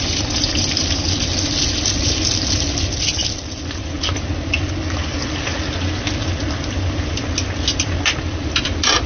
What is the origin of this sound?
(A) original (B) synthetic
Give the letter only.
A